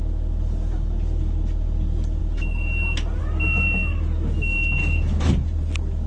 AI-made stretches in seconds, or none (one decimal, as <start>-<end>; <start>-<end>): 4.8-5.3